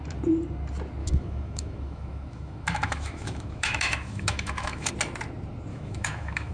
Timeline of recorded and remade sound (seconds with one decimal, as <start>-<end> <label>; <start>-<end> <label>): 0.0-1.0 recorded; 1.0-4.9 remade; 4.9-5.7 recorded; 5.7-6.5 remade